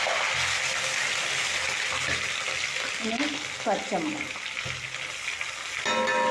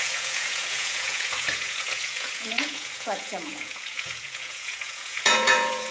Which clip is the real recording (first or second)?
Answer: first